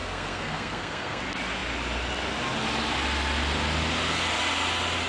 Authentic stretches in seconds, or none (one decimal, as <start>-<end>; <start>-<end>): 1.2-5.1